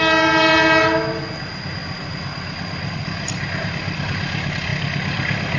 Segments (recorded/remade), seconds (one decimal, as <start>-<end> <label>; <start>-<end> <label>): 0.0-5.6 recorded